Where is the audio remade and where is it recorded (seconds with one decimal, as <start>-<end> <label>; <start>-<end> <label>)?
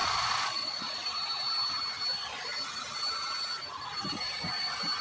0.0-0.8 remade; 0.8-5.0 recorded